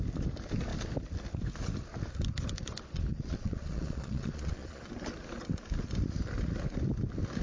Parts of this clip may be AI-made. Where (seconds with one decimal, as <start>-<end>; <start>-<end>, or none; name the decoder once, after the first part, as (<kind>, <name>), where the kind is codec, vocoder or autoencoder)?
3.1-4.9 (vocoder, Vocos)